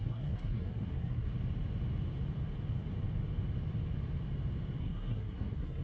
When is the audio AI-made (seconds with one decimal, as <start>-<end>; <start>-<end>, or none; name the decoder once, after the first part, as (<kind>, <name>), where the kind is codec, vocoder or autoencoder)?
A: 0.0-1.3 (codec, SNAC); 4.8-5.8